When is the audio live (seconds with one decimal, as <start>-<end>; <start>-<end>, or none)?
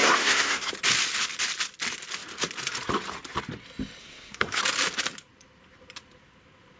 0.7-4.0; 4.6-6.8